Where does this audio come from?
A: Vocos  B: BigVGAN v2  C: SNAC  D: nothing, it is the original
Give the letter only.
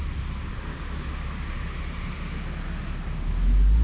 D